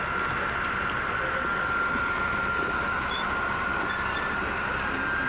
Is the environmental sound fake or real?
real